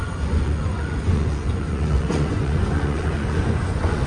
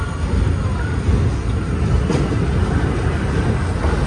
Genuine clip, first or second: second